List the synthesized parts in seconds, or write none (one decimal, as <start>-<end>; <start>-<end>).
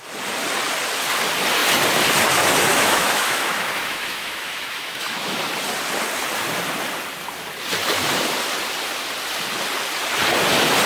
2.7-5.4